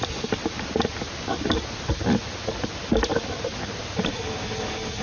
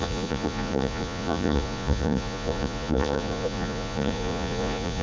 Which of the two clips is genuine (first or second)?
first